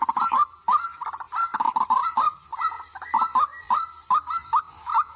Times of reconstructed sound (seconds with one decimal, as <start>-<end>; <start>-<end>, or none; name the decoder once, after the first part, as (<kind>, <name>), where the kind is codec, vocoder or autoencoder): none